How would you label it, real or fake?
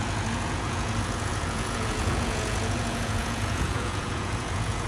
fake